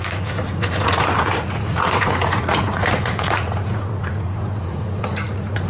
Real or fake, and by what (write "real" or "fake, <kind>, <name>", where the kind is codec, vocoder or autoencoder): fake, vocoder, Vocos